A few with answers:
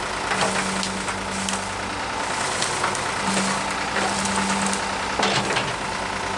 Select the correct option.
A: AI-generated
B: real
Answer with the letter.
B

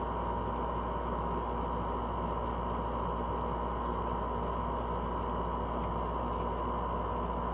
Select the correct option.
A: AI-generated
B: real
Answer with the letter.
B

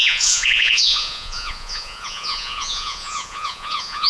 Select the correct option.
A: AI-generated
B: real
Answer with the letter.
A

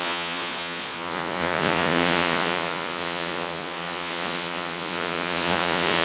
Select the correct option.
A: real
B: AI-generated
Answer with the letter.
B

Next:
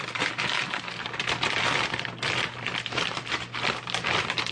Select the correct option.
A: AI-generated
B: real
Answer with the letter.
B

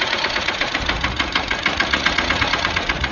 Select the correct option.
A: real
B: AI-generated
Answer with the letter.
B